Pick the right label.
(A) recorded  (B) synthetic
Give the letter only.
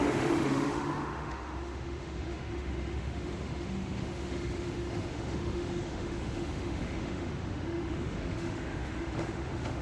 B